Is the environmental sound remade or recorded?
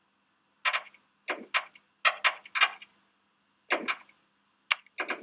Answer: recorded